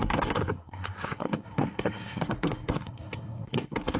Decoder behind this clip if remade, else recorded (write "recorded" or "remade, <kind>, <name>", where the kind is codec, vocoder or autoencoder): remade, codec, SNAC